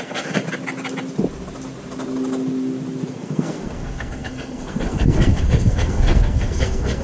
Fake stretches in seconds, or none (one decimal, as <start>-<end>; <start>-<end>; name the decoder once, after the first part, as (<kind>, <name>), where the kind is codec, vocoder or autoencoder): 0.0-0.4 (codec, SNAC); 3.1-7.0